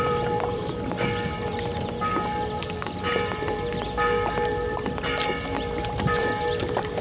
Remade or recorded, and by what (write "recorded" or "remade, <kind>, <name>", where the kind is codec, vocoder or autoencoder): remade, vocoder, BigVGAN v2